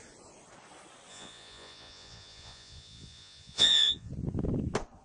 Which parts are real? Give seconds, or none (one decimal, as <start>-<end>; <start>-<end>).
0.0-1.1; 4.1-5.0